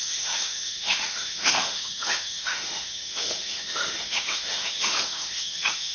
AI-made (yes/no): yes